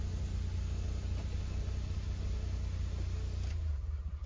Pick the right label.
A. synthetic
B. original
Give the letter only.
B